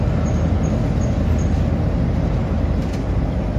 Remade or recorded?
recorded